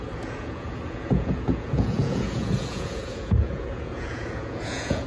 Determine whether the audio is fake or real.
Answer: fake